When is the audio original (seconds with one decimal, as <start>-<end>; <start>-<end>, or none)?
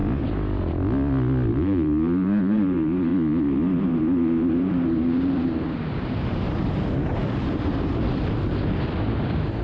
0.0-1.5; 3.1-3.8; 7.2-9.0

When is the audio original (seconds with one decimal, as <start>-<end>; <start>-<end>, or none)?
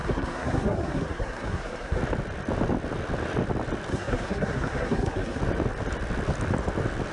2.0-3.9; 5.4-7.1